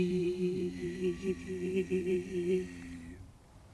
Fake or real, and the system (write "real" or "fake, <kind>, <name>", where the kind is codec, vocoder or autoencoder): fake, vocoder, BigVGAN v2